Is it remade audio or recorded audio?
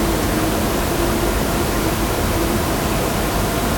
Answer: recorded